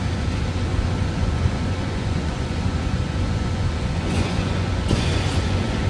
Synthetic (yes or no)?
yes